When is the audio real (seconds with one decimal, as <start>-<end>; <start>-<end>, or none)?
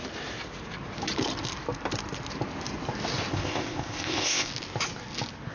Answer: 0.0-3.3; 4.5-5.5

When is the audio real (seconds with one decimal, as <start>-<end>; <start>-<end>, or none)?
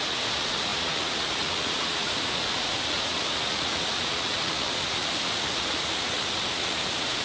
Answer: none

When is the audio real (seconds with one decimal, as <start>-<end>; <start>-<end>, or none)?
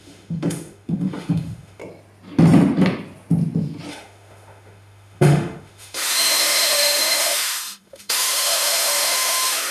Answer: 1.8-3.9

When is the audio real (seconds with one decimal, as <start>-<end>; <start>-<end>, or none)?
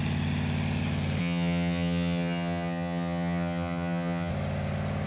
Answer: 0.0-1.2; 4.3-5.1